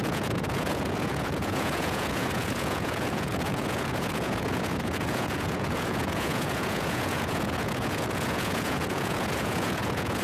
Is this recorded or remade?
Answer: remade